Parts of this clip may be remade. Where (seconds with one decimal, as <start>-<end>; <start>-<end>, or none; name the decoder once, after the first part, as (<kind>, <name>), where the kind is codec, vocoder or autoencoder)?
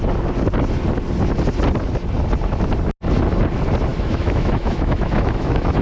3.9-5.8 (autoencoder, DAC-VAE)